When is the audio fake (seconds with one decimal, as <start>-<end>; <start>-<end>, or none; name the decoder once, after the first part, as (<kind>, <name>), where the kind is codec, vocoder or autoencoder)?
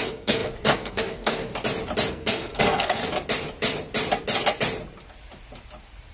0.0-1.5 (codec, SNAC); 2.1-3.0